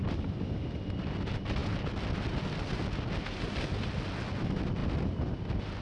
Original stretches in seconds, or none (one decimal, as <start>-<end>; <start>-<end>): 0.0-5.8